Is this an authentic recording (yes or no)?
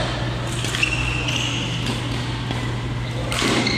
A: yes